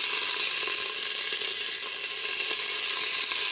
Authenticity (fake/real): real